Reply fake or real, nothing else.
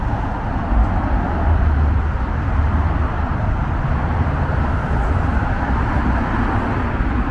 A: real